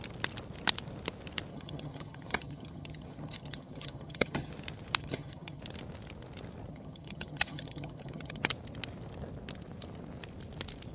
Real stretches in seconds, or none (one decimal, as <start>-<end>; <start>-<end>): 0.0-1.5; 4.5-5.0; 5.6-6.7; 8.4-10.9